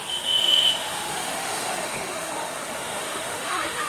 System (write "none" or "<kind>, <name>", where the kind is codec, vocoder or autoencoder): autoencoder, DAC-VAE